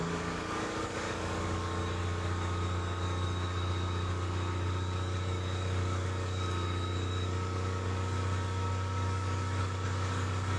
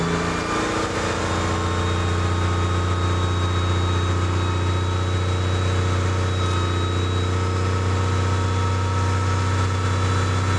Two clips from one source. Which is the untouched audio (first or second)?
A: second